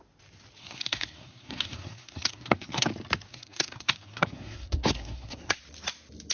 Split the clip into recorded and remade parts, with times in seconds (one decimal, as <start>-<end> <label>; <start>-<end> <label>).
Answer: 0.0-0.6 recorded; 0.6-2.9 remade; 2.9-3.3 recorded; 3.3-5.6 remade; 5.6-6.3 recorded